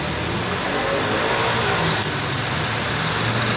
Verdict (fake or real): real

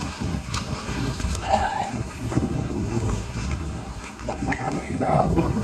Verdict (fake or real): fake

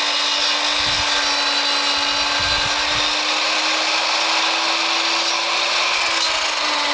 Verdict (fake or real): real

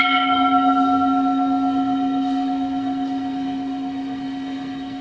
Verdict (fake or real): fake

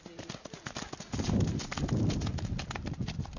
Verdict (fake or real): real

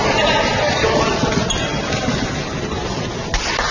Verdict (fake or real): real